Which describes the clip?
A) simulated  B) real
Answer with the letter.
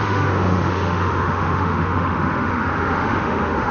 A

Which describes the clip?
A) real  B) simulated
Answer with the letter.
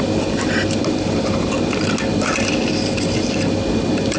A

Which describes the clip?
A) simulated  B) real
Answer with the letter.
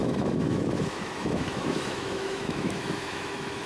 A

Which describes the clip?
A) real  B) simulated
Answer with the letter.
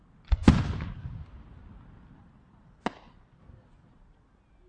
A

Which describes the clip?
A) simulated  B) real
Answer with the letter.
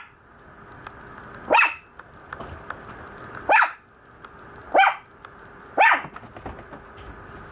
B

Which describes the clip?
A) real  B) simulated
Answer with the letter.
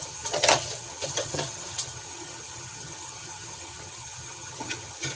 B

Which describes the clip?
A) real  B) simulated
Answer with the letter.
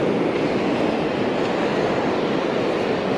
A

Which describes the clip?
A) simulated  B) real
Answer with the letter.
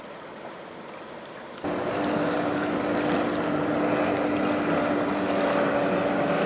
B